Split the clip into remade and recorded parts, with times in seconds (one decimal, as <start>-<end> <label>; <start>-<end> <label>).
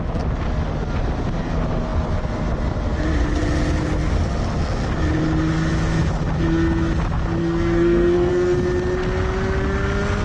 0.0-7.4 recorded; 7.4-8.3 remade; 8.3-10.2 recorded